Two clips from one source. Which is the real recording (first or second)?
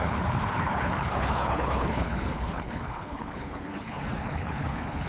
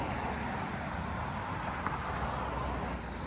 second